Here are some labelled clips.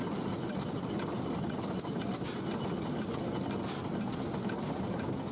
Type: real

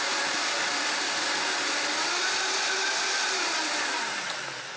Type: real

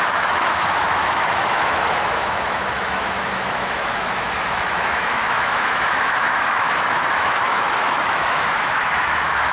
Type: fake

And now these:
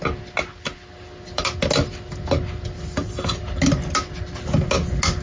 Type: real